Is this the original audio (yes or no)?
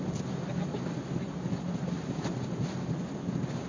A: yes